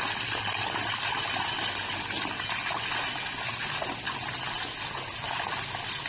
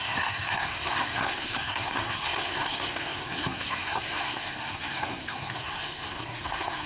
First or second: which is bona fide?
first